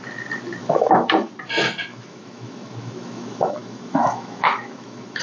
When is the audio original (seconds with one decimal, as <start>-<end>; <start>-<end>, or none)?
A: 0.0-0.6; 1.3-1.9